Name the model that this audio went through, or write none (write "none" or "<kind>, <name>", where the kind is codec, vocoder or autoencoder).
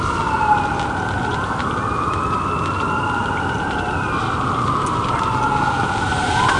none